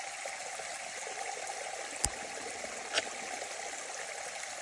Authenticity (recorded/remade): recorded